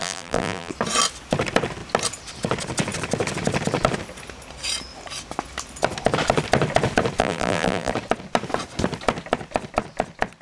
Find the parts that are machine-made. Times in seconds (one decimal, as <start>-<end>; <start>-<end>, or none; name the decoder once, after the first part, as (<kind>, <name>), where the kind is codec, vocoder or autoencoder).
0.0-0.7 (vocoder, BigVGAN v2); 7.2-7.9

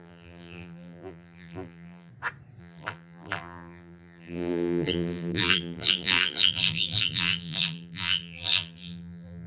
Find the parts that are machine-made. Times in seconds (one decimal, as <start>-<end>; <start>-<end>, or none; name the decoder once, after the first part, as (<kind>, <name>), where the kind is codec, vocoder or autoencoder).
0.0-2.1 (vocoder, BigVGAN v2); 2.6-9.5